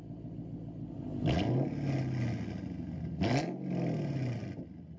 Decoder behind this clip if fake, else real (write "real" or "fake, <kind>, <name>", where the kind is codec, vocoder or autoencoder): real